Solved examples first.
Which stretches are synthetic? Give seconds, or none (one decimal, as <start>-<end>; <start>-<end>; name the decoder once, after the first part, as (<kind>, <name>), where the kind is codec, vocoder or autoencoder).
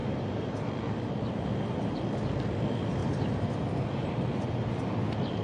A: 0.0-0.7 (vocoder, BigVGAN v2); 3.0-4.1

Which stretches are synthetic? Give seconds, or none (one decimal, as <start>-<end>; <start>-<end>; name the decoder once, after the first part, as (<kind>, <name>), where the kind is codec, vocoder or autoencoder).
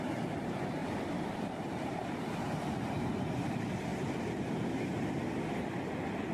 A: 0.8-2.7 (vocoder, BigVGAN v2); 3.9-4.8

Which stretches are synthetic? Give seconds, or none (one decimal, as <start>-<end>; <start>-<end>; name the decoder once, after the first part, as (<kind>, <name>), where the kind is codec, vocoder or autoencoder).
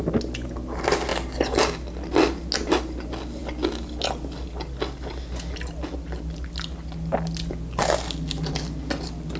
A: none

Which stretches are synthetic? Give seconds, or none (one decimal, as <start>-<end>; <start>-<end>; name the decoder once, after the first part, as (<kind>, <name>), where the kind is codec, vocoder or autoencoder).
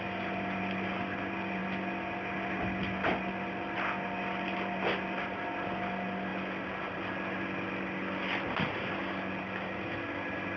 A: 0.0-1.6 (vocoder, BigVGAN v2); 2.3-6.3; 7.1-10.6